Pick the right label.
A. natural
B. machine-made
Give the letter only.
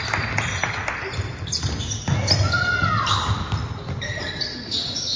A